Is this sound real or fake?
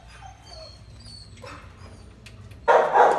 real